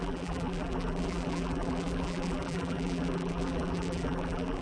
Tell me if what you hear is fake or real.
fake